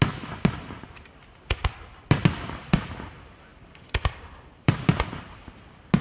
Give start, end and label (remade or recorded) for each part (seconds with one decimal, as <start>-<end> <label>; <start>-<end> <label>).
0.0-3.5 recorded; 3.5-4.7 remade; 4.7-6.0 recorded